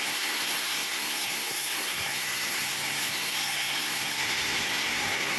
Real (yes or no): no